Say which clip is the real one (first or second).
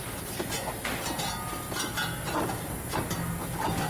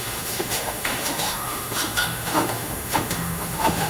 first